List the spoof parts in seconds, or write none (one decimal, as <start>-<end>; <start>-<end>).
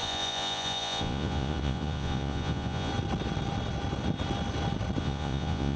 0.0-2.9; 5.0-5.8